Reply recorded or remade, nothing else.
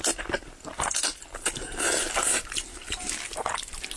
recorded